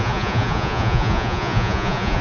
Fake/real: fake